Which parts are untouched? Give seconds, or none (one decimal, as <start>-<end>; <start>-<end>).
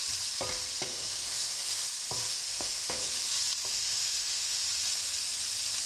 0.0-0.9; 1.9-2.3; 3.1-3.7; 4.6-5.9